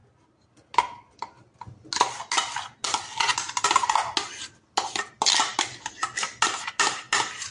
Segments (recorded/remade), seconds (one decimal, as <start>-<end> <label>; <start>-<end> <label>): 0.0-7.5 recorded

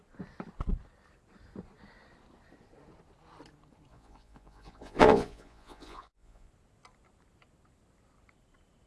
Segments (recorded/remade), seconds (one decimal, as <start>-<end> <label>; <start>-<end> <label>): 0.0-3.9 recorded; 3.9-6.5 remade; 6.5-8.9 recorded

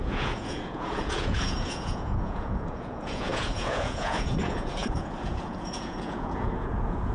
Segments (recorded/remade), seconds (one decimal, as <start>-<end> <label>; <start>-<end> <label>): 0.0-7.1 remade

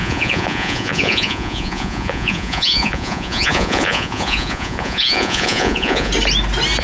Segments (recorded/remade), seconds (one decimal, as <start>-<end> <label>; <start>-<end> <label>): 0.0-6.1 remade; 6.1-6.8 recorded

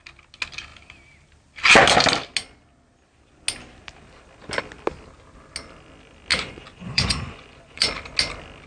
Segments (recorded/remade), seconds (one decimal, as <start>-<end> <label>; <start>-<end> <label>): 0.0-6.3 recorded; 6.3-7.9 remade; 7.9-8.7 recorded

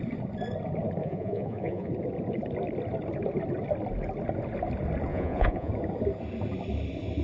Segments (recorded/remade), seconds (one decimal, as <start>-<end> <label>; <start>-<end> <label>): 0.0-1.0 recorded; 1.0-1.9 remade; 1.9-5.1 recorded; 5.1-5.7 remade; 5.7-7.2 recorded

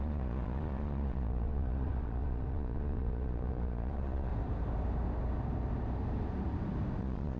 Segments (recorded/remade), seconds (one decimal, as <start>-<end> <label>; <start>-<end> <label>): 0.0-4.3 remade; 4.3-7.0 recorded; 7.0-7.4 remade